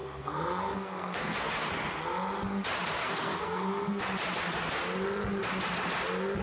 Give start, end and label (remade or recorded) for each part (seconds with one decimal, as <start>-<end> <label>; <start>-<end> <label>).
0.0-1.5 remade; 1.5-3.0 recorded; 3.0-4.0 remade; 4.0-6.4 recorded